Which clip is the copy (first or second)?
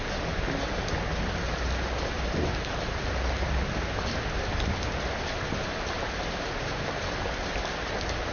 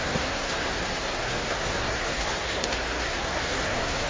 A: second